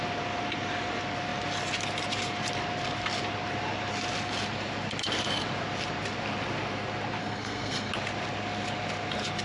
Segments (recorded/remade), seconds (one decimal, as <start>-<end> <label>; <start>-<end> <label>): 0.0-7.2 recorded; 7.2-7.9 remade; 7.9-9.4 recorded